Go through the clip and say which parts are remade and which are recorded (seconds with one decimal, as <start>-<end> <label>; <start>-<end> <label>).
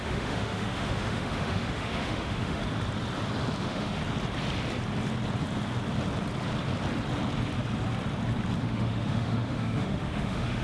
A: 0.0-2.6 remade; 2.6-3.6 recorded; 3.6-4.0 remade; 4.0-8.6 recorded; 8.6-10.6 remade